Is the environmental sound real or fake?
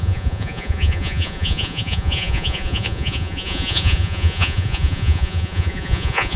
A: fake